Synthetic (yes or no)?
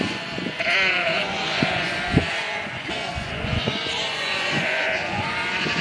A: yes